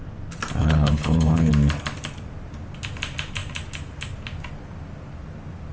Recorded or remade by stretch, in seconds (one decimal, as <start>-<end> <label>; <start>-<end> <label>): 0.0-0.6 recorded; 0.6-1.5 remade; 1.5-5.7 recorded